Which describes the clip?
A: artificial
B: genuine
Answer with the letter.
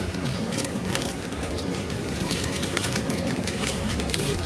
A